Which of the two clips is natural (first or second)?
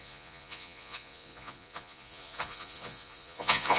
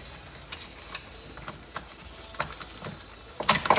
second